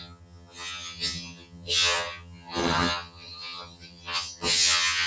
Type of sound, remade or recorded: remade